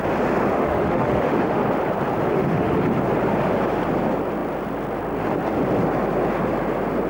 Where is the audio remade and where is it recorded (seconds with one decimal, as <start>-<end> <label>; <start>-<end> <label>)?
0.0-0.5 recorded; 0.5-1.6 remade; 1.6-2.3 recorded; 2.3-2.8 remade; 2.8-7.1 recorded